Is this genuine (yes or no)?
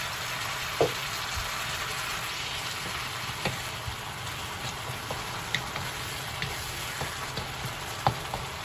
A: yes